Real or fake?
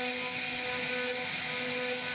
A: real